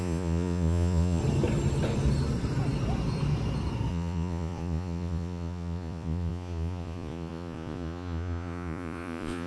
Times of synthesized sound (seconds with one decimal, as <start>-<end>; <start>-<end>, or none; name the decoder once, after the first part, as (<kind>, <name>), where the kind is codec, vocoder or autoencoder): 0.0-1.2 (vocoder, Vocos); 3.9-9.5